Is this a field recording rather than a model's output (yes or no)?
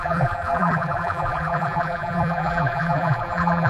no